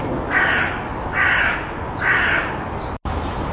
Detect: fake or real real